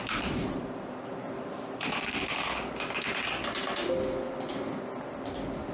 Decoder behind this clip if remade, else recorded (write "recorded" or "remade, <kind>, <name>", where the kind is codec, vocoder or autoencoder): recorded